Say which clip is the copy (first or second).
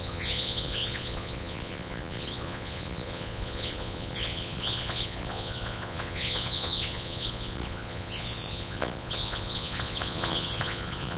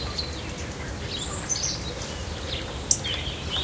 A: first